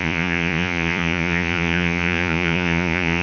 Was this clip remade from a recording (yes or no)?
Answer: yes